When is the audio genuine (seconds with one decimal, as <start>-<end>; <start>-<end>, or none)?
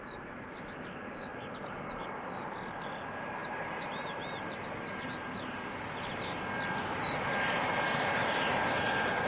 0.0-9.3